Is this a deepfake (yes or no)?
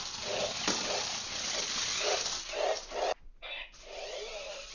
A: no